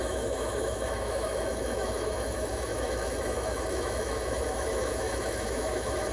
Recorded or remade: remade